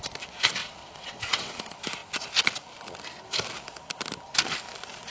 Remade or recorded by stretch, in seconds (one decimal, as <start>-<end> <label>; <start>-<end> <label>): 0.0-0.6 recorded; 0.6-1.5 remade; 1.5-5.1 recorded